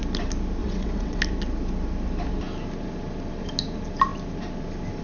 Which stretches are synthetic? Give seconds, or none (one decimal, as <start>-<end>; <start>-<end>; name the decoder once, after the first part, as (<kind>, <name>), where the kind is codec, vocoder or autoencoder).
0.6-1.2 (vocoder, WaveNeXt)

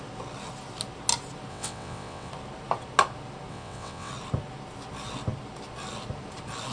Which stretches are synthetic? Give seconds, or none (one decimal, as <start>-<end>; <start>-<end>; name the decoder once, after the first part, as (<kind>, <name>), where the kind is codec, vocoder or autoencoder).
1.5-2.3 (vocoder, WaveNeXt); 3.5-4.1

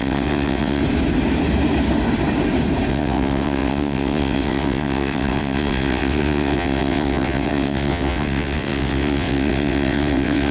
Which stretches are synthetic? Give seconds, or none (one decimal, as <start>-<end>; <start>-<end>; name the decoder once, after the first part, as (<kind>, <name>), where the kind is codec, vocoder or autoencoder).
0.0-0.8 (vocoder, WaveNeXt); 2.9-10.5

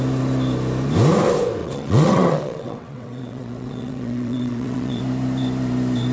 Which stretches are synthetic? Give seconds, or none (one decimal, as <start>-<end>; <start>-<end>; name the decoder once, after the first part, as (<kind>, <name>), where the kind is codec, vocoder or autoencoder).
1.6-5.0 (vocoder, WaveNeXt)

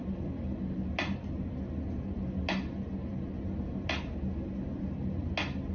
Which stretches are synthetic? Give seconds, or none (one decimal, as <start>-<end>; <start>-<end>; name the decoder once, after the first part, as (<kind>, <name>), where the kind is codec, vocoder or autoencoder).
none

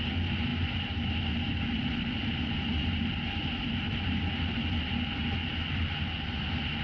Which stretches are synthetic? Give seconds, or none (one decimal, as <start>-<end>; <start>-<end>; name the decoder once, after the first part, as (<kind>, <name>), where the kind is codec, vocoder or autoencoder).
none

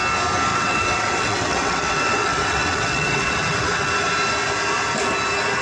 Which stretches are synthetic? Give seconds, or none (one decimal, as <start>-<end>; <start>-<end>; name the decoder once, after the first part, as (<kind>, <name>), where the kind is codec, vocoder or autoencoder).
0.5-3.9 (vocoder, WaveNeXt)

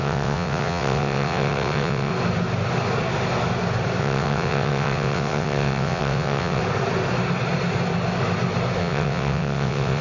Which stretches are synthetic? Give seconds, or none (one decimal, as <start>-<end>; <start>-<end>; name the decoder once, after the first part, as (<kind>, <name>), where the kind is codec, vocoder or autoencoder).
0.0-2.1 (vocoder, WaveNeXt); 4.0-6.6; 8.8-10.0